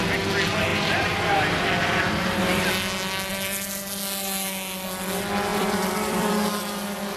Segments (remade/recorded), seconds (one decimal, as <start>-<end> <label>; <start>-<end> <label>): 0.0-0.7 recorded; 0.7-2.4 remade; 2.4-3.3 recorded; 3.3-4.0 remade; 4.0-5.5 recorded; 5.5-6.3 remade; 6.3-7.2 recorded